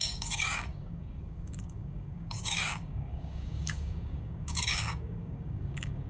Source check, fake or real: fake